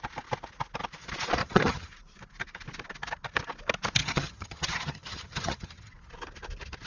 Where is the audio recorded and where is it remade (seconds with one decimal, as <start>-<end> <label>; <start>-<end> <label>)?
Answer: 0.0-1.4 recorded; 1.4-1.9 remade; 1.9-4.0 recorded; 4.0-5.9 remade; 5.9-6.9 recorded